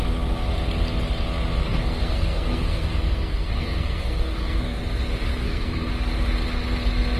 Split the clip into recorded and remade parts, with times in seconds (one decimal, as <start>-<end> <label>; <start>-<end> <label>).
0.0-1.6 recorded; 1.6-4.8 remade; 4.8-5.3 recorded; 5.3-5.9 remade; 5.9-7.2 recorded